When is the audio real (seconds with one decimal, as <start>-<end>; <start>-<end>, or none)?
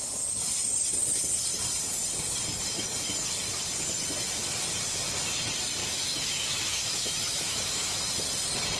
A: 0.0-5.8; 8.0-8.8